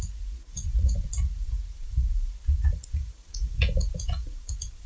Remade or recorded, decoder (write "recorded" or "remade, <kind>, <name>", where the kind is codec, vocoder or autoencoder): remade, vocoder, Vocos